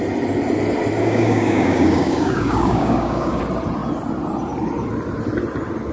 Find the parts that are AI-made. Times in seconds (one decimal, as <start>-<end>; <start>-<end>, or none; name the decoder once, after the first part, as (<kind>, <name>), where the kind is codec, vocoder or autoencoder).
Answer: 1.0-3.4 (codec, DAC)